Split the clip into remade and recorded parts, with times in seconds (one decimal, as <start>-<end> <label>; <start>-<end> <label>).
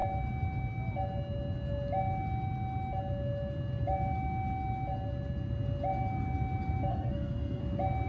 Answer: 0.0-6.9 recorded; 6.9-7.6 remade; 7.6-8.1 recorded